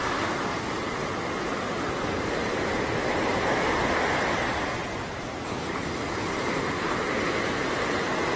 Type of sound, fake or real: fake